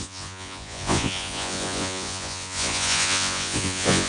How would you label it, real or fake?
fake